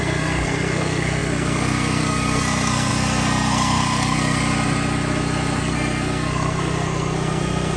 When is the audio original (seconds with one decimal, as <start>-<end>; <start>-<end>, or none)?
4.4-5.6